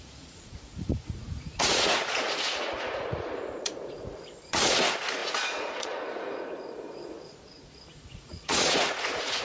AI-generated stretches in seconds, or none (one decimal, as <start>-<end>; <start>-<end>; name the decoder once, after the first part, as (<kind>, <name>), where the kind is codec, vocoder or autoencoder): 0.0-9.4 (vocoder, Vocos)